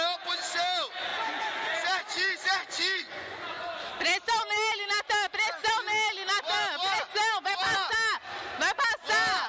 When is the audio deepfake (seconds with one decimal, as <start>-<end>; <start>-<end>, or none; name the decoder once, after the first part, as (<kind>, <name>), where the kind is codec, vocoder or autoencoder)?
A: 1.1-3.8 (vocoder, Vocos)

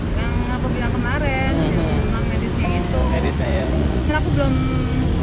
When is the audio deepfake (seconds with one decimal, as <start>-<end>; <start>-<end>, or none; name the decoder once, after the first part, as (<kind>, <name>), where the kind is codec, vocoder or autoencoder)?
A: 3.0-4.1 (vocoder, Vocos)

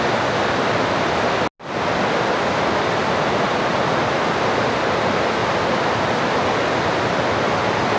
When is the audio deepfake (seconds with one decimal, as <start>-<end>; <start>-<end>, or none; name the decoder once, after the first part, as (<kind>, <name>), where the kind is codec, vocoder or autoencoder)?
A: none

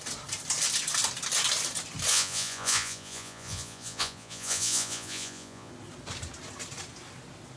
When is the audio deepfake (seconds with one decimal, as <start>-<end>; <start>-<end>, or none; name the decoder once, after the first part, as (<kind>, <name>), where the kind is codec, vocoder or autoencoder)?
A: 2.1-5.7 (vocoder, Vocos)

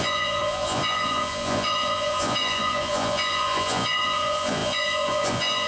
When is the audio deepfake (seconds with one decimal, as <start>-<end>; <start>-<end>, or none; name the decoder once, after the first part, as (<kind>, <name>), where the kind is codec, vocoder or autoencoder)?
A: 0.0-5.7 (vocoder, Vocos)

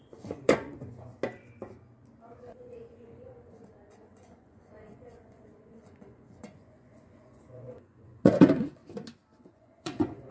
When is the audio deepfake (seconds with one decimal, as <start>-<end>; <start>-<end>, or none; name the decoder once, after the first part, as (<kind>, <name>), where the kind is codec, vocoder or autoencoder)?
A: 0.0-1.1 (vocoder, Vocos); 2.4-8.8; 9.4-10.3

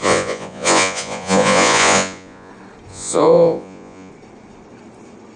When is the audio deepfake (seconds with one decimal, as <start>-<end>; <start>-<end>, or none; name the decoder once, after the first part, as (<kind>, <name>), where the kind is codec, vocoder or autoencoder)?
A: 0.0-2.5 (vocoder, Vocos); 2.9-4.1

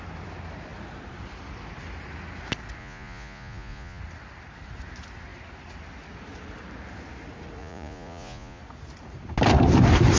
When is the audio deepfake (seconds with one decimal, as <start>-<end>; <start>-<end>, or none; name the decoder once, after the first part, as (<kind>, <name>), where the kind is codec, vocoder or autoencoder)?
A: 2.8-4.0 (vocoder, Vocos); 7.6-8.6